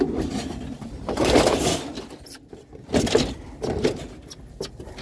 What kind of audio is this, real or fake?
real